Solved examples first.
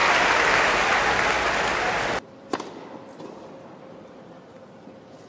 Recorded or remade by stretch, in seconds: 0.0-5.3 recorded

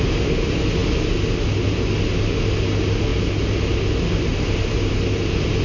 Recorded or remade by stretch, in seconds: 0.0-5.6 recorded

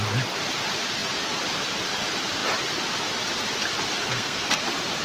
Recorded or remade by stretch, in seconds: 0.0-4.0 recorded; 4.0-4.6 remade; 4.6-5.0 recorded

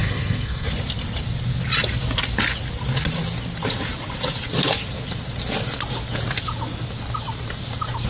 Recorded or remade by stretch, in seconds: 0.0-0.7 remade; 0.7-8.1 recorded

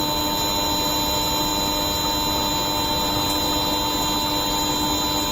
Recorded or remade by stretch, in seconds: 0.0-5.3 recorded

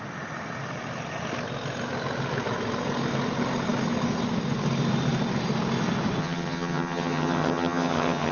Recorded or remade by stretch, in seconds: 0.0-6.2 recorded; 6.2-8.3 remade